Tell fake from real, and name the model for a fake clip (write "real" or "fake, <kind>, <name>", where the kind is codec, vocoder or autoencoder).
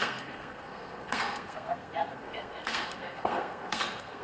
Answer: fake, codec, SNAC